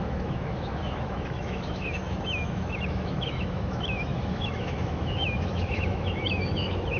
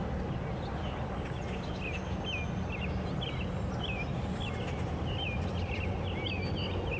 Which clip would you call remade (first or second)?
first